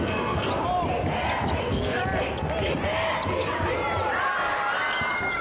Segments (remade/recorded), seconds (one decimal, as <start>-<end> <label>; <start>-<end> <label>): 0.0-0.5 remade; 0.5-1.6 recorded; 1.6-2.0 remade; 2.0-5.4 recorded